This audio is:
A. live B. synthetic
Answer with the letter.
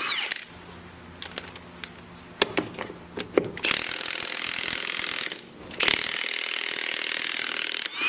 A